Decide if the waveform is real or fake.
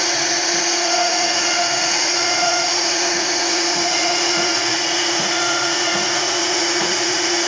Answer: fake